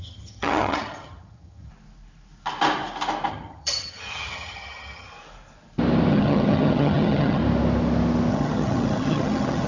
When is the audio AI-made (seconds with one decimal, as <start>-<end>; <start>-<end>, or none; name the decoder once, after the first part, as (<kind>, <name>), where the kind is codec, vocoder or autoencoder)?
0.0-1.7 (vocoder, HiFi-GAN); 3.3-5.1; 6.1-7.4; 8.3-9.7